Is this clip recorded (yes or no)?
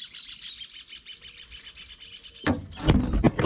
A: yes